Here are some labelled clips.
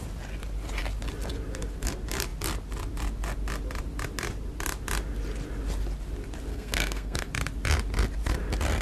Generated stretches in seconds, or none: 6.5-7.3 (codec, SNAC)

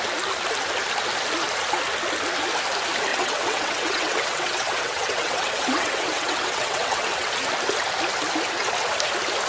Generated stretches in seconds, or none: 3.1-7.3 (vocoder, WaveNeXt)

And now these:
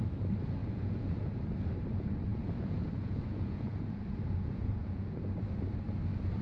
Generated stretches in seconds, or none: 0.6-1.3 (vocoder, Vocos); 2.3-5.3

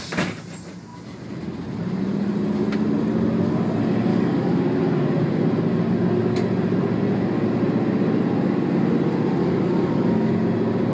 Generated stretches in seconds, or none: 4.1-4.6 (codec, DAC); 9.4-10.3

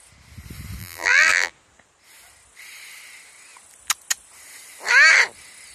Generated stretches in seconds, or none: 0.8-1.5 (vocoder, BigVGAN v2)

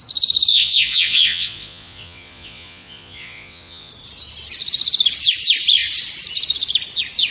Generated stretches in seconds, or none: 0.5-3.9 (vocoder, Vocos)